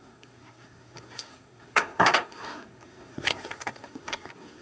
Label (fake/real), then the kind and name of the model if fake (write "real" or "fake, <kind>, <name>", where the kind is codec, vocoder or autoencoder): fake, codec, SNAC